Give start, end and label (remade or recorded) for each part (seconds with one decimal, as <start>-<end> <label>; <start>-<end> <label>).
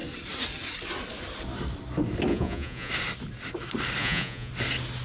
0.0-2.3 recorded; 2.3-2.9 remade; 2.9-4.0 recorded; 4.0-4.5 remade; 4.5-5.0 recorded